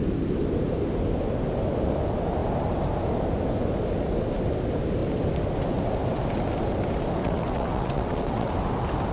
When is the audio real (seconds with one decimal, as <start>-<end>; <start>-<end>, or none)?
0.0-7.2; 8.5-9.1